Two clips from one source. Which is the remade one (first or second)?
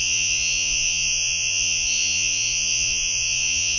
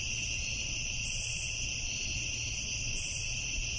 first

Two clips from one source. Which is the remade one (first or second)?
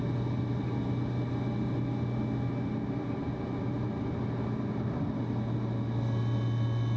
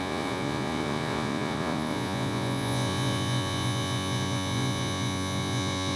second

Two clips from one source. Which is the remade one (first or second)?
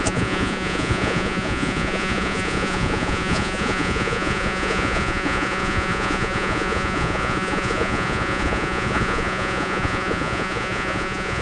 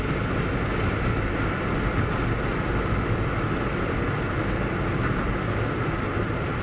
first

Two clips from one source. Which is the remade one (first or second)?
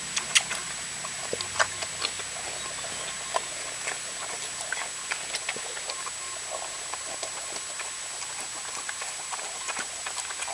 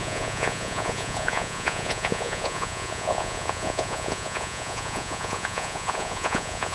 second